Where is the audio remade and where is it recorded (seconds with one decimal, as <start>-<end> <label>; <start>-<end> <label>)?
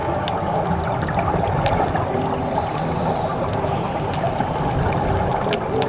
0.0-0.6 remade; 0.6-5.9 recorded